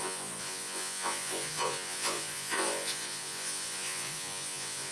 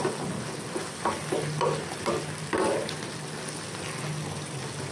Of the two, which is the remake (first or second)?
first